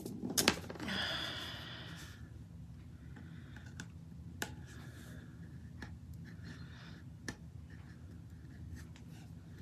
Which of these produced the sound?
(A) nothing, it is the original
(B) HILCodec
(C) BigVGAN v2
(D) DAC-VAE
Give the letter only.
A